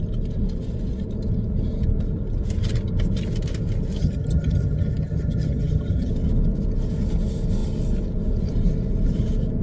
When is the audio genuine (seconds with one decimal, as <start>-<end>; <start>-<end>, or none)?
0.0-4.0; 6.1-9.6